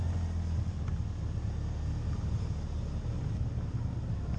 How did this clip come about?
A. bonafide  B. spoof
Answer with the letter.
A